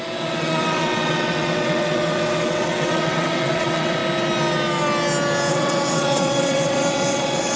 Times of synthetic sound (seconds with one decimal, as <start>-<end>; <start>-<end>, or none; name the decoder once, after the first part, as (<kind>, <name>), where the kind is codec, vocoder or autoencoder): 0.0-4.0 (vocoder, WaveNeXt); 5.5-7.6